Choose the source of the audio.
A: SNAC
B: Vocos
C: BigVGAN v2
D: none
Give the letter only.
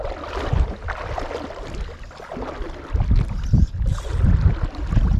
D